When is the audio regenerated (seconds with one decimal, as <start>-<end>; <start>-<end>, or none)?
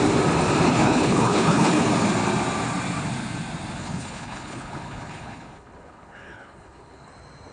0.7-1.9; 3.8-7.1